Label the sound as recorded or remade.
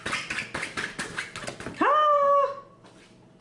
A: recorded